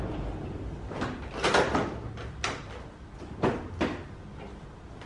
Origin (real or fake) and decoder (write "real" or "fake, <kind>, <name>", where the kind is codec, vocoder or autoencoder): real